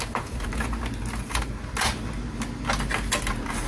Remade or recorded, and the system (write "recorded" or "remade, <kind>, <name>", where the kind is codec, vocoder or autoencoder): recorded